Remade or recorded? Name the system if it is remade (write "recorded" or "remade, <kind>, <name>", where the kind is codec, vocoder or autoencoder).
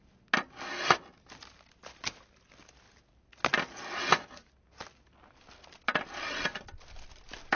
recorded